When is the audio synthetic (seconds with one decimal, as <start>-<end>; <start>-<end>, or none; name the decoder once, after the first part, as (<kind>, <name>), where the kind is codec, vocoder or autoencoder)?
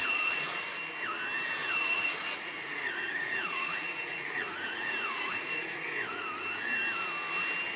0.0-0.6 (vocoder, Vocos); 1.6-6.3